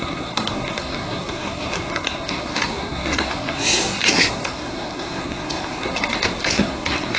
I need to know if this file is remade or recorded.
remade